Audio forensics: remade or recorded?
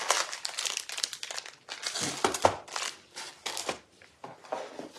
recorded